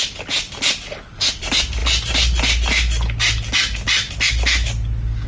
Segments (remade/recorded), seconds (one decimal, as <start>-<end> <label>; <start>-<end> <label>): 0.0-5.3 recorded

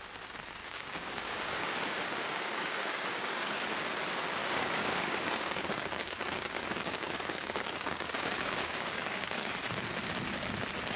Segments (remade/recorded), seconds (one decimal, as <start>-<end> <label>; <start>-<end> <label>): 0.0-0.6 recorded; 0.6-3.6 remade; 3.6-4.4 recorded; 4.4-9.5 remade; 9.5-11.0 recorded

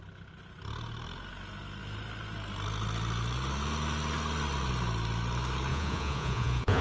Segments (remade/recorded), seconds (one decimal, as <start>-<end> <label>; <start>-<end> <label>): 0.0-5.7 recorded; 5.7-6.8 remade

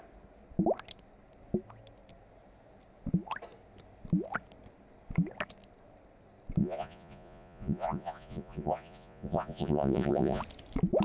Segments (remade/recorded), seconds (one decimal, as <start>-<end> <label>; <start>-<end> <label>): 0.0-6.6 recorded; 6.6-10.4 remade; 10.4-11.0 recorded

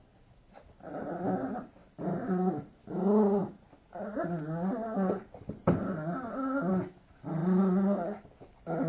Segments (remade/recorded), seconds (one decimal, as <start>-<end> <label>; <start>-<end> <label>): 0.0-8.9 recorded

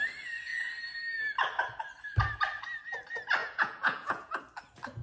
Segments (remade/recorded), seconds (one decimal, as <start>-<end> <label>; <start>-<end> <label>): 0.0-3.4 recorded; 3.4-4.4 remade; 4.4-5.0 recorded

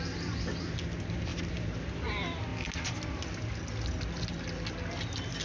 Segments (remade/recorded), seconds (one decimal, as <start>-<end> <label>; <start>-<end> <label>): 0.0-1.3 recorded; 1.3-1.9 remade; 1.9-5.4 recorded